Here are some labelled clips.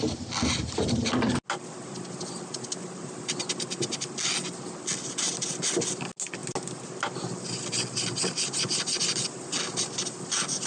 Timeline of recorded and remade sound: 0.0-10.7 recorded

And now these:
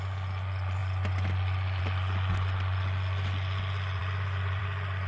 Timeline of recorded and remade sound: 0.0-5.1 recorded

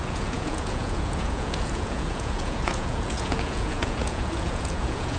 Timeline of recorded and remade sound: 0.0-5.2 remade

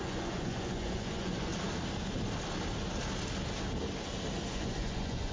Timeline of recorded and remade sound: 0.0-1.5 remade; 1.5-4.5 recorded; 4.5-5.3 remade

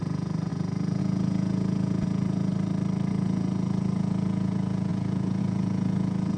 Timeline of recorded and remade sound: 0.0-2.5 remade; 2.5-3.1 recorded; 3.1-6.4 remade

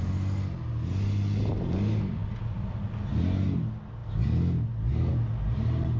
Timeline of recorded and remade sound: 0.0-6.0 recorded